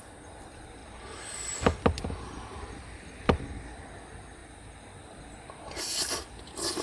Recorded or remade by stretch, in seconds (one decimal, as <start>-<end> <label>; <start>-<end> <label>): 0.0-6.8 recorded